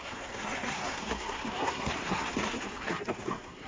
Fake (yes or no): yes